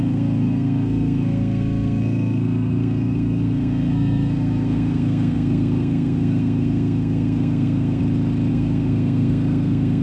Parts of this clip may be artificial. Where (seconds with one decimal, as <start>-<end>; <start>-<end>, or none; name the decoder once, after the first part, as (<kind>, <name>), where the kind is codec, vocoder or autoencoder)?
0.0-8.0 (codec, SNAC); 8.5-10.0